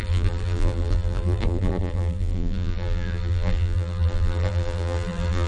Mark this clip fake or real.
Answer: fake